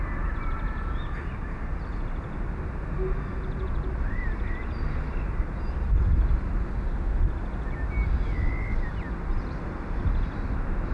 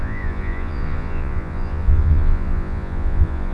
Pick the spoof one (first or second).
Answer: second